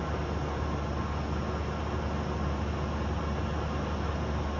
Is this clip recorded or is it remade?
recorded